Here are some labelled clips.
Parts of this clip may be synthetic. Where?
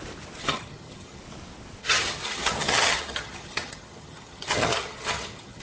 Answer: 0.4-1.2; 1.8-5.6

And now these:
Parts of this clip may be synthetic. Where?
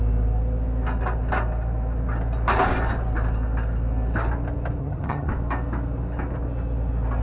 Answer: 4.8-5.3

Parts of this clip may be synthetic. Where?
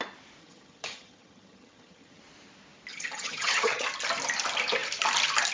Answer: 0.4-2.2; 2.9-3.9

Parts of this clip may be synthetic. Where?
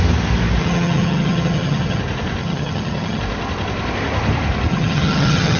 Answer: 0.6-2.0; 2.4-3.2; 4.7-5.6